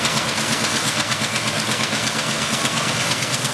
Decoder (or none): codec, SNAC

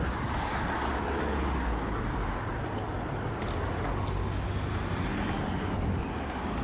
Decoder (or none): none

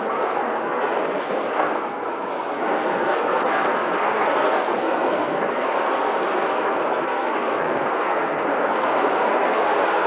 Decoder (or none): codec, SNAC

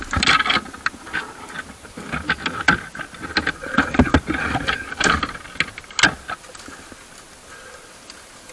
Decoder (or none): none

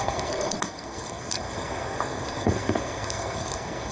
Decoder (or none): codec, SNAC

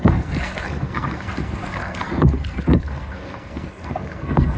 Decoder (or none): codec, SNAC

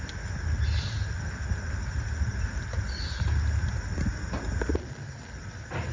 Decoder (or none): none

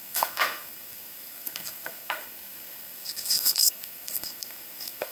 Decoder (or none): codec, SNAC